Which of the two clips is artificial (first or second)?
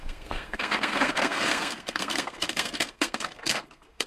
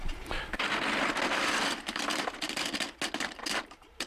first